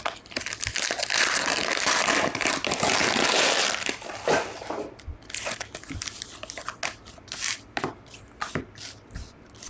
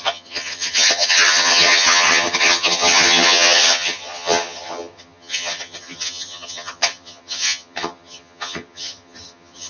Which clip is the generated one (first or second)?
second